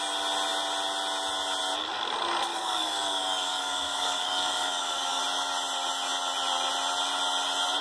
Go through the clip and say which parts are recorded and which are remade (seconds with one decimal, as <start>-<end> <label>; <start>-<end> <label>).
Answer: 0.0-2.5 recorded; 2.5-5.2 remade; 5.2-7.8 recorded